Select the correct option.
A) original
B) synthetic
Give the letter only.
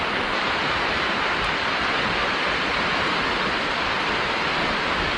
A